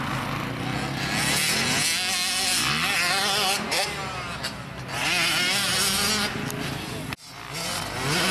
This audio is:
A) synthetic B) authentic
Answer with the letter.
B